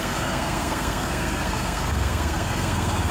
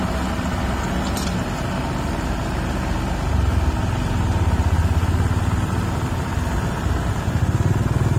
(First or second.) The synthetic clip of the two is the first